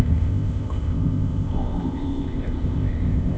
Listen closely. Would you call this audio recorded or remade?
remade